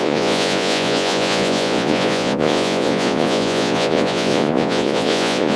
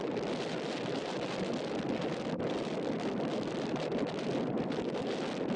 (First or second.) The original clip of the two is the second